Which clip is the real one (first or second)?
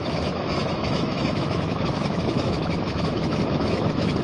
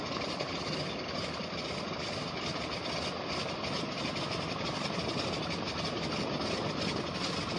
second